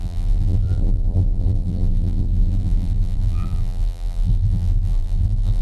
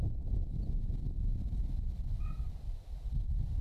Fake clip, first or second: first